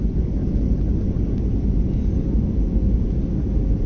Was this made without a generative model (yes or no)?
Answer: yes